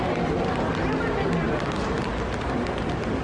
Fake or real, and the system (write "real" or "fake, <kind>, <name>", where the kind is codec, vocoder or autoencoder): real